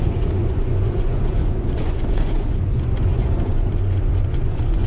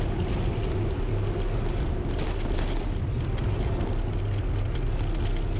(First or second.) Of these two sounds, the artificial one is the first